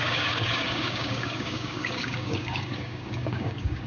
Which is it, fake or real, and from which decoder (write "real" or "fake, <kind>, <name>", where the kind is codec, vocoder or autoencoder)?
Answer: fake, codec, DAC